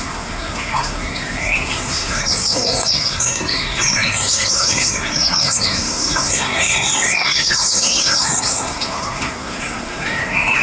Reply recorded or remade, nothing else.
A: remade